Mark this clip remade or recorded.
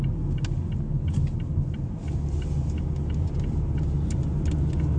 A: recorded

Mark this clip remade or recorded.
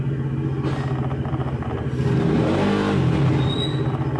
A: recorded